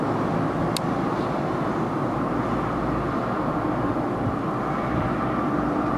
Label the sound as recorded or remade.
recorded